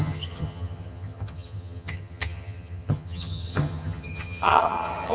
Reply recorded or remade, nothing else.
remade